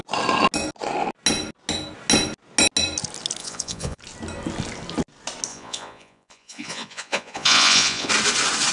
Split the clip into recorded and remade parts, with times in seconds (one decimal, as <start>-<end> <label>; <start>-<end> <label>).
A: 0.0-3.4 recorded; 3.4-4.0 remade; 4.0-5.5 recorded; 5.5-8.1 remade; 8.1-8.7 recorded